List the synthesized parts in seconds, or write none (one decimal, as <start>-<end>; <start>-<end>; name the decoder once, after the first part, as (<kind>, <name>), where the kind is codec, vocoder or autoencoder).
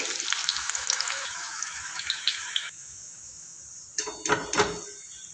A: 0.4-3.6 (autoencoder, DAC-VAE)